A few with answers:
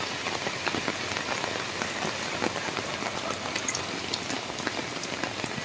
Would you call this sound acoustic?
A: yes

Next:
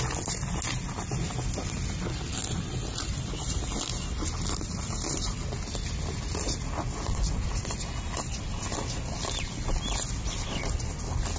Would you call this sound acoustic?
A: yes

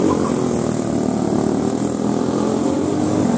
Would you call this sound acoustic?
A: yes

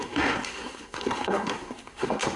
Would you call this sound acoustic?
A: no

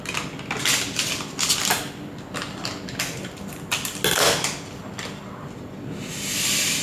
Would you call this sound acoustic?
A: yes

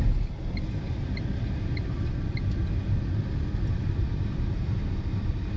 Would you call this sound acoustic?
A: yes